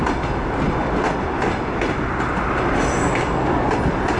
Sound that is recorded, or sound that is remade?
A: recorded